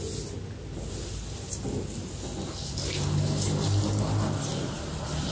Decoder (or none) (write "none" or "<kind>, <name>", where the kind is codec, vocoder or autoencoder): none